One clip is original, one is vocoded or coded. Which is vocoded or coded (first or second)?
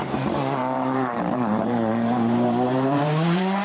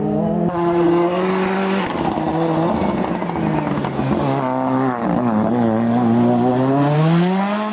first